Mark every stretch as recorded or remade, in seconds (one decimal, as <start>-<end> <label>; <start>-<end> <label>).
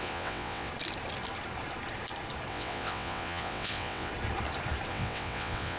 0.0-0.7 remade; 0.7-2.5 recorded; 2.5-4.1 remade; 4.1-4.9 recorded; 4.9-5.8 remade